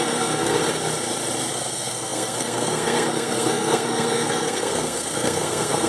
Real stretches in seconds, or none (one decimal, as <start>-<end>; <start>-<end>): 0.6-1.5